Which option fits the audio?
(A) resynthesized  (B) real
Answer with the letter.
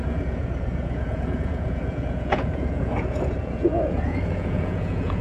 A